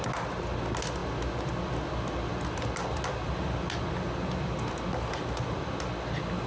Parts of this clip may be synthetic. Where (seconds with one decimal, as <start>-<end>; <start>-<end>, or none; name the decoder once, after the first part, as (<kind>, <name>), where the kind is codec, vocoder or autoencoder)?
none